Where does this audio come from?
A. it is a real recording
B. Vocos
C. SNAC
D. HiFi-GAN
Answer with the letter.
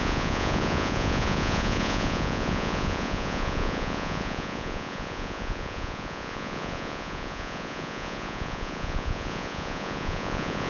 B